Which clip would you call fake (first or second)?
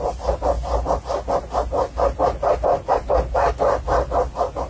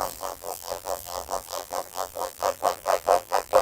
second